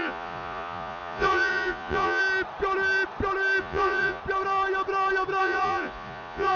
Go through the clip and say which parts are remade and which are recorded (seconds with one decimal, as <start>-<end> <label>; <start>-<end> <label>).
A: 0.0-2.2 remade; 2.2-3.6 recorded; 3.6-4.2 remade; 4.2-5.4 recorded; 5.4-6.6 remade